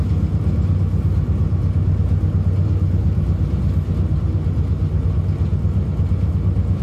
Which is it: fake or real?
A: real